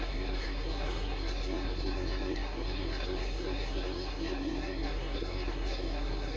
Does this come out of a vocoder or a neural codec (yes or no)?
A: yes